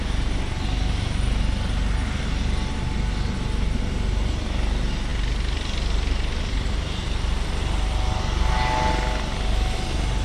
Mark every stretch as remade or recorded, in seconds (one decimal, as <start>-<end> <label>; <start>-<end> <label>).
0.0-5.1 recorded; 5.1-8.5 remade; 8.5-10.2 recorded